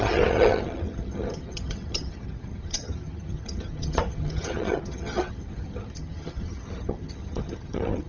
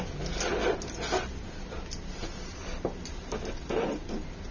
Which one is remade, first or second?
first